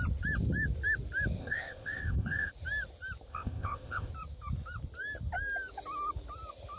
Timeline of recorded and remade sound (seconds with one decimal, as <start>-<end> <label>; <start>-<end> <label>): 0.0-1.4 recorded; 1.4-2.5 remade; 2.5-3.3 recorded; 3.3-4.1 remade; 4.1-6.8 recorded